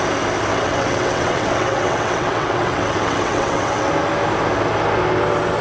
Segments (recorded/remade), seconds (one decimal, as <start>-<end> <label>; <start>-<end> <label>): 0.0-0.5 recorded; 0.5-3.9 remade; 3.9-5.6 recorded